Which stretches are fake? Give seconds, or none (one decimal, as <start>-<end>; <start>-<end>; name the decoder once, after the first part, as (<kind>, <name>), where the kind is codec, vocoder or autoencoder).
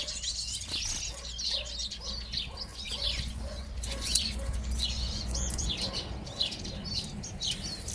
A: 2.7-5.7 (vocoder, Vocos)